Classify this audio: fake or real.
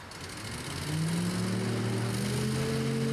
real